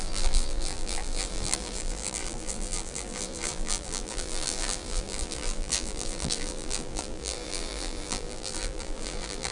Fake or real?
fake